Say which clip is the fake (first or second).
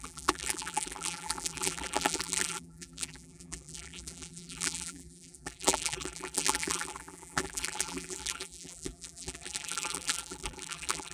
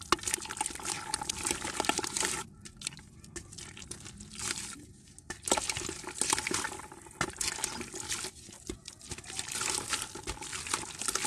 first